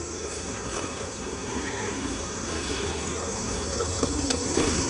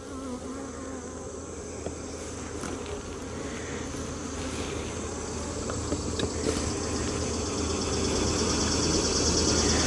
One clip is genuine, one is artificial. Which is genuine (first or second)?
second